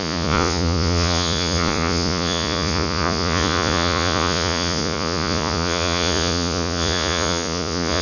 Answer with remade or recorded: remade